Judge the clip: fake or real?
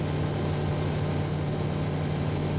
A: real